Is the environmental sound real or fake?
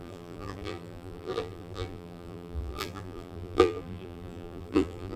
fake